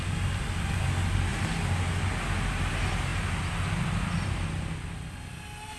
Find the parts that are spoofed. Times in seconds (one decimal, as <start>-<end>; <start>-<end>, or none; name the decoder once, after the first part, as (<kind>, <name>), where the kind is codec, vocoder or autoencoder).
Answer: none